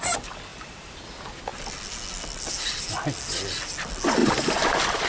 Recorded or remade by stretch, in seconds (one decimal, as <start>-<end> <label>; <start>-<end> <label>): 0.0-0.5 recorded; 0.5-1.0 remade; 1.0-4.2 recorded; 4.2-5.1 remade